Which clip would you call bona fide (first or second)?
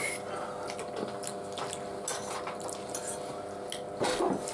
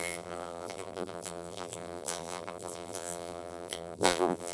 first